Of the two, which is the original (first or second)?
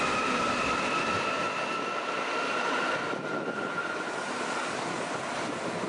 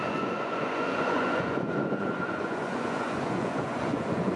first